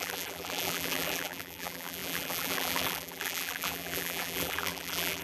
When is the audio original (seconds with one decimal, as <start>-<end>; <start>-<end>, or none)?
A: none